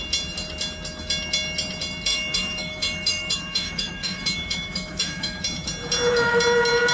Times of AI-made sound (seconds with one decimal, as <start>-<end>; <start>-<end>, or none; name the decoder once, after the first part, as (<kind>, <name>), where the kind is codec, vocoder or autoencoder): 2.1-5.4 (autoencoder, DAC-VAE)